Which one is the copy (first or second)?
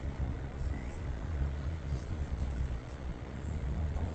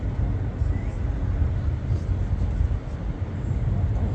first